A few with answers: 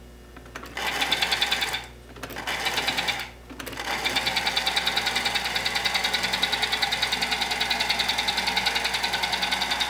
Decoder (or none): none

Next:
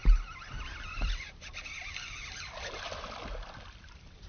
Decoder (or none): none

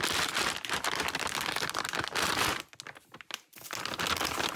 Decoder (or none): none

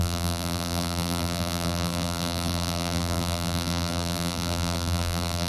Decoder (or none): vocoder, BigVGAN v2